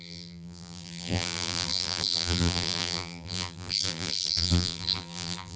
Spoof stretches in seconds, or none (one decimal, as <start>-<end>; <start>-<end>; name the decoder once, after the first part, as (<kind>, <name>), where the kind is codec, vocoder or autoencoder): 0.0-5.6 (vocoder, BigVGAN v2)